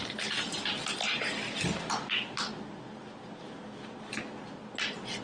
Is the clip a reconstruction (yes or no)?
no